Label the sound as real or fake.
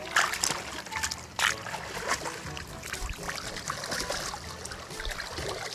real